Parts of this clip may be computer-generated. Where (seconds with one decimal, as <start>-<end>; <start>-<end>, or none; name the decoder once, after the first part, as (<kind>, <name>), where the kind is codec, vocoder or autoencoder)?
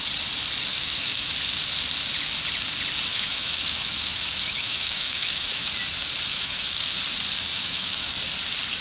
0.7-1.3 (autoencoder, DAC-VAE); 3.1-5.7; 6.3-7.0; 7.5-8.1